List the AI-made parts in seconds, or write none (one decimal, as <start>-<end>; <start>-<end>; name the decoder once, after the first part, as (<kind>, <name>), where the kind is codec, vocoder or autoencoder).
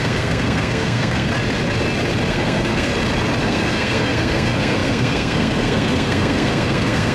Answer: 0.0-1.3 (codec, SNAC); 2.3-2.9; 3.4-7.1